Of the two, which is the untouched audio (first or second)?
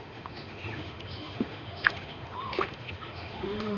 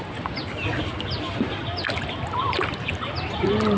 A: second